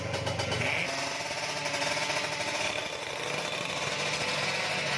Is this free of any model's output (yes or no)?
yes